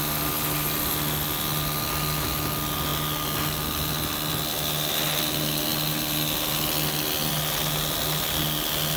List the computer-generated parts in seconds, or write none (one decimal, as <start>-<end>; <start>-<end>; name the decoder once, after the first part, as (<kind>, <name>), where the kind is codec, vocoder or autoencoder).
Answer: none